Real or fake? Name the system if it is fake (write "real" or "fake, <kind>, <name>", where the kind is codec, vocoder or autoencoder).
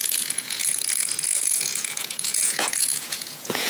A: fake, vocoder, Vocos